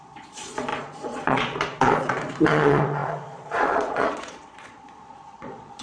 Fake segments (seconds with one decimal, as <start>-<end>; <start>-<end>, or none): 0.0-5.8